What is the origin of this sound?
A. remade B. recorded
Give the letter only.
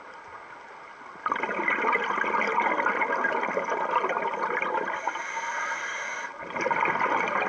B